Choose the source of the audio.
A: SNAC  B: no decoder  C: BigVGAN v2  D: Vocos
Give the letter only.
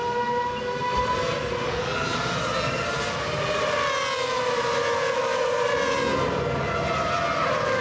B